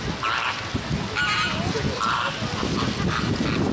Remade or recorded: recorded